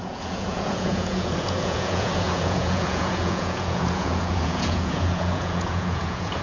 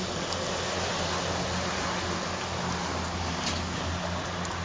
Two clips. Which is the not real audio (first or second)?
first